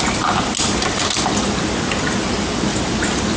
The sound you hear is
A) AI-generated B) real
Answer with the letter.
B